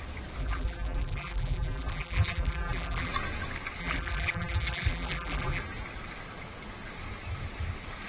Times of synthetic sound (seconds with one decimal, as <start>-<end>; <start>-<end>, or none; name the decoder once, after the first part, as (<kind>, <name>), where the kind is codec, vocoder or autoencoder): 0.4-3.1 (vocoder, BigVGAN v2); 3.8-5.6